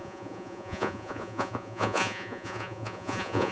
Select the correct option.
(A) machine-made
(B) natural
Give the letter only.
A